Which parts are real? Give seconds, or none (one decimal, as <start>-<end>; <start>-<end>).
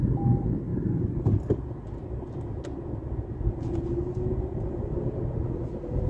0.0-6.1